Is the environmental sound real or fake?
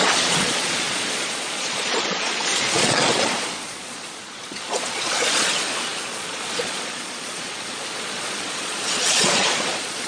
fake